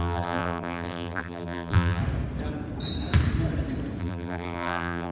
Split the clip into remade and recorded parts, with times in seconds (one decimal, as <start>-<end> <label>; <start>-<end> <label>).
0.0-2.0 remade; 2.0-4.0 recorded; 4.0-5.1 remade